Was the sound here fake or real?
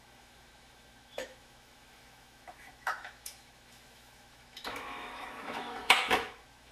fake